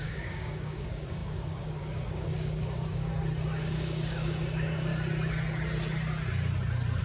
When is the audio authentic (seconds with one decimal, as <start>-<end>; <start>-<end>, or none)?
3.1-3.6; 4.9-7.0